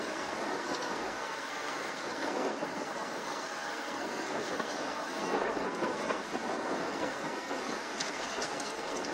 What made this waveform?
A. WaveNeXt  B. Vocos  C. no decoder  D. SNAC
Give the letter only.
D